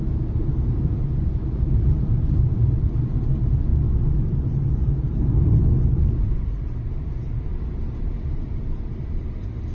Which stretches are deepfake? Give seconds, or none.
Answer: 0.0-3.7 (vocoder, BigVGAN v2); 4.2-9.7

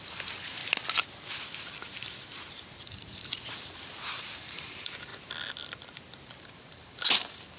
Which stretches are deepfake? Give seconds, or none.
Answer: 0.0-0.6 (vocoder, BigVGAN v2); 2.5-5.1; 6.4-7.6

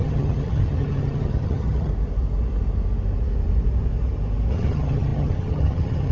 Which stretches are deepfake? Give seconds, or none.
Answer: 0.0-1.9 (vocoder, HiFi-GAN); 4.5-6.1